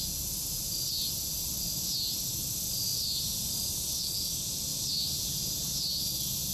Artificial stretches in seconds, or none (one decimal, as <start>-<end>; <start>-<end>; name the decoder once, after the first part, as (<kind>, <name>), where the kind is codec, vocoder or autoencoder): 2.9-3.7 (vocoder, BigVGAN v2); 4.7-5.3